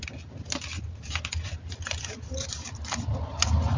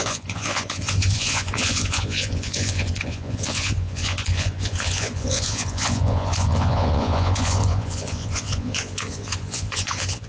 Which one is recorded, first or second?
first